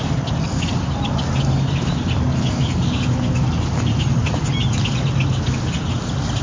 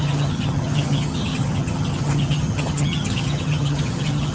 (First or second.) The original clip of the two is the first